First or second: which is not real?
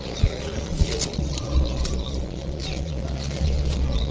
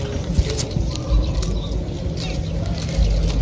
first